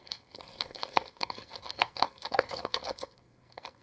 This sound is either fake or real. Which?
fake